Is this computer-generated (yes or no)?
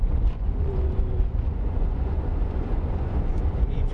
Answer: yes